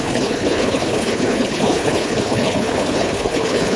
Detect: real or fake fake